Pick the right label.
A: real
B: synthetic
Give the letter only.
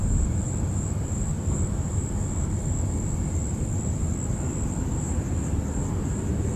A